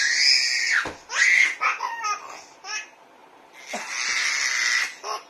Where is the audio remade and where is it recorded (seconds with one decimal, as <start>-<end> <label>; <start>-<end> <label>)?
0.0-5.3 recorded